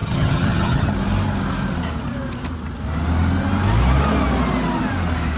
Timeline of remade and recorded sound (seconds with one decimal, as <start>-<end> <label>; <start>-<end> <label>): 0.0-0.9 remade; 0.9-5.4 recorded